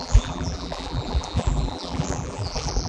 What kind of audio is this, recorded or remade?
remade